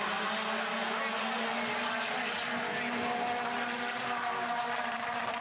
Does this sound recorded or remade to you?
recorded